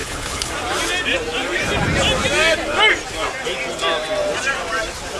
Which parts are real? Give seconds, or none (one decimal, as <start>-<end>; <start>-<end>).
0.5-5.2